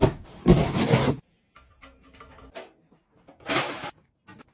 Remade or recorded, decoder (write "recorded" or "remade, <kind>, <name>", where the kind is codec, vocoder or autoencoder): remade, vocoder, BigVGAN v2